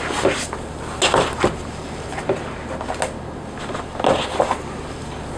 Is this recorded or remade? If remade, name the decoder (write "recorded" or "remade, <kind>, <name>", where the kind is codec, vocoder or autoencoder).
recorded